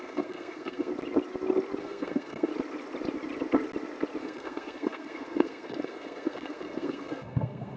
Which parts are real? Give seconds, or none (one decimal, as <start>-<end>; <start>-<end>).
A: 0.9-1.8; 2.5-4.2